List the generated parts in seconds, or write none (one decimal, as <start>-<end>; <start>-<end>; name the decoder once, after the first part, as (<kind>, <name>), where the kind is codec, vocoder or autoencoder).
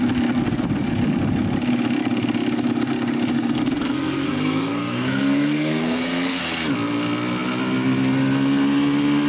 3.3-6.4 (codec, SNAC)